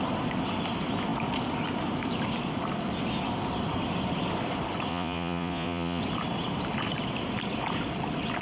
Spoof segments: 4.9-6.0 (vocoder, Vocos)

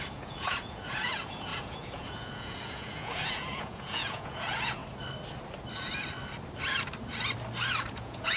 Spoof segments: 0.0-4.8 (vocoder, Vocos); 7.9-8.4

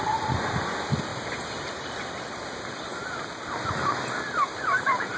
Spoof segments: none

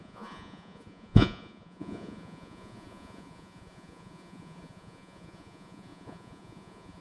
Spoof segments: 0.0-7.0 (vocoder, Vocos)

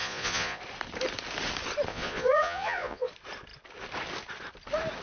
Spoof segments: 0.0-0.6 (vocoder, Vocos); 1.9-3.1